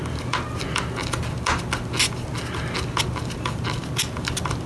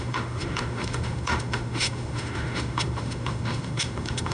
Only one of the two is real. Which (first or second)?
first